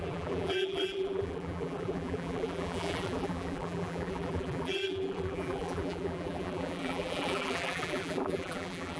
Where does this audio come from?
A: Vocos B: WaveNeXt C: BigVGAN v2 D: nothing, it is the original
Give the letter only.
C